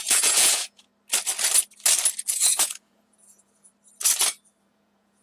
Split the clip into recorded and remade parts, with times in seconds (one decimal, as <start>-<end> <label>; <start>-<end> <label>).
0.0-0.9 remade; 0.9-2.3 recorded; 2.3-3.7 remade; 3.7-4.6 recorded; 4.6-5.2 remade